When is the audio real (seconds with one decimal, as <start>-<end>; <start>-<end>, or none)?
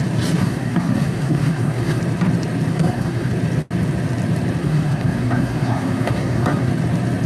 0.0-0.4; 2.0-2.7; 3.3-4.6; 6.7-7.3